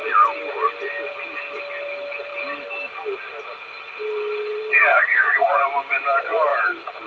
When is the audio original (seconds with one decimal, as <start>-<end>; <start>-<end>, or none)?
0.0-4.9; 5.6-7.1